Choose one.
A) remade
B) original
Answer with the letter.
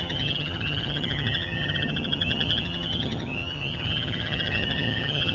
A